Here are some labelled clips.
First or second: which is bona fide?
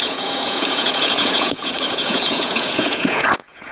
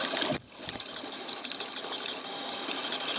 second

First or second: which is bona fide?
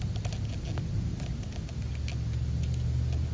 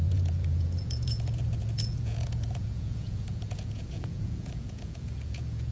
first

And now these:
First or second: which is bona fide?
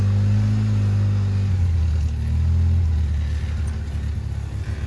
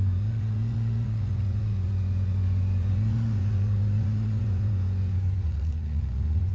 first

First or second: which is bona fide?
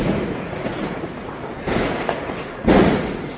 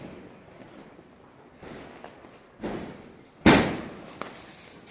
second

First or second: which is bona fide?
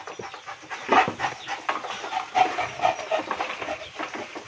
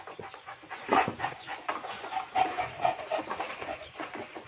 first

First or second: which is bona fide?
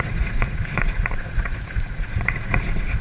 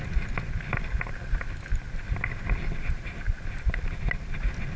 second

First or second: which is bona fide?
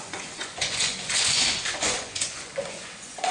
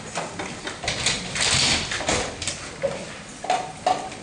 second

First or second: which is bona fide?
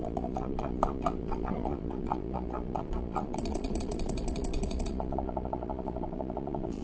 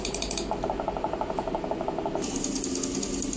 second